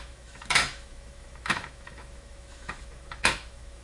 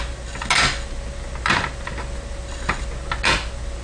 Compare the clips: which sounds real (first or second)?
second